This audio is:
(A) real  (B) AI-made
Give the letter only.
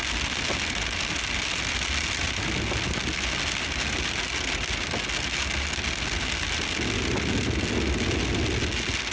A